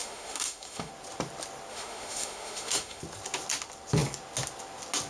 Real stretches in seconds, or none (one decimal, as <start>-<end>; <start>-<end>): 0.9-1.7; 3.0-5.1